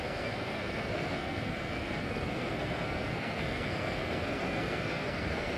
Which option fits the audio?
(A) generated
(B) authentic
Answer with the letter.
A